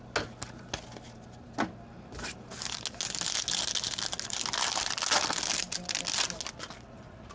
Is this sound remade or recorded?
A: recorded